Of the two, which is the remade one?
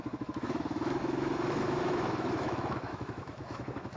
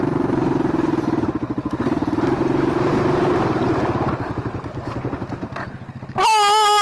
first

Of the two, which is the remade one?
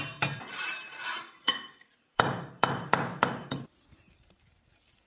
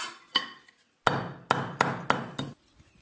first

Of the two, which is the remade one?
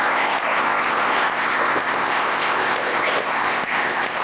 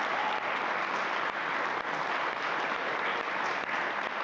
first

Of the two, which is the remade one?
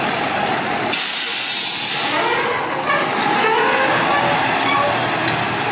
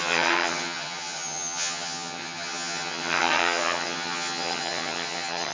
second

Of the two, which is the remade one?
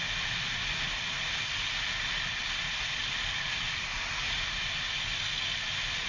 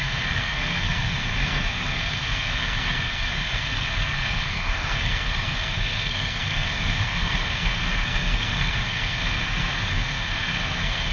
second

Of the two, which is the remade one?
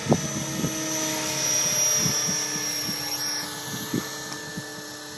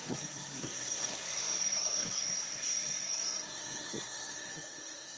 second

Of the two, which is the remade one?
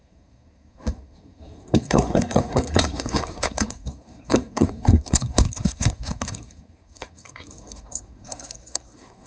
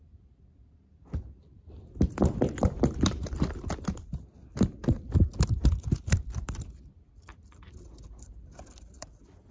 first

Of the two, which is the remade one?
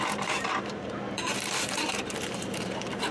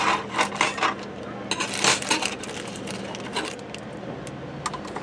first